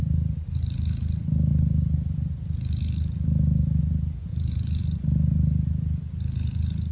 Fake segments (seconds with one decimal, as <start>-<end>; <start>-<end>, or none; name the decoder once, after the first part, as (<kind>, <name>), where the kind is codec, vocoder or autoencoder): none